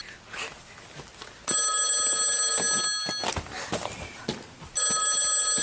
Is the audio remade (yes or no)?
no